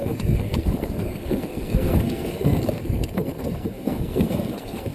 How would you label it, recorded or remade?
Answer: remade